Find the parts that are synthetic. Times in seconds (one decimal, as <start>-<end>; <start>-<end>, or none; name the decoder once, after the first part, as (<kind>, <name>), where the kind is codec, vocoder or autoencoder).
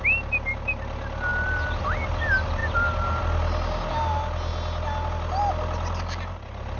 none